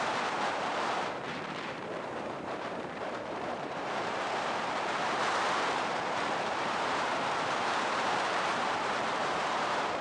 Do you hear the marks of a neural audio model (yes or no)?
yes